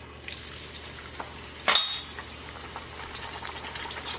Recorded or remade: recorded